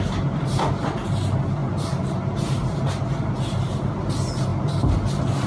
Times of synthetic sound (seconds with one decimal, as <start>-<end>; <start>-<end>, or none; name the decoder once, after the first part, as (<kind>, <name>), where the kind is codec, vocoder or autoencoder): none